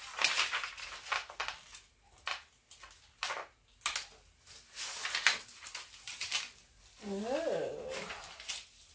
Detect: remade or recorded recorded